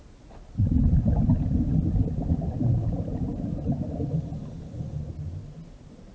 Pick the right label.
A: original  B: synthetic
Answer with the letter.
A